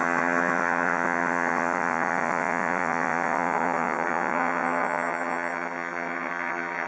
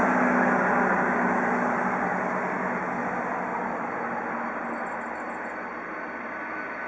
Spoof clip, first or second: first